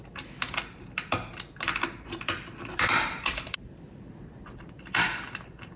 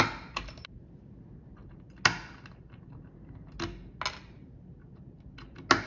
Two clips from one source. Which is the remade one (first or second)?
first